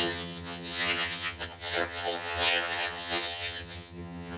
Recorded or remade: remade